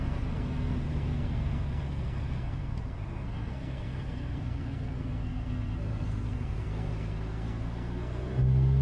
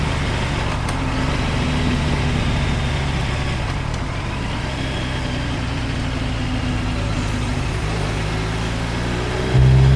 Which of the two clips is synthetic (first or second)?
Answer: first